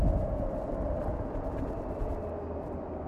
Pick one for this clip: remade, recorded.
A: recorded